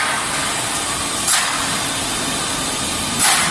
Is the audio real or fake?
real